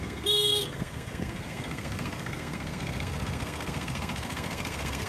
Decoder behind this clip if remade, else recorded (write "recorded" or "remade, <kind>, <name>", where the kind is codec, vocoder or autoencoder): remade, codec, SNAC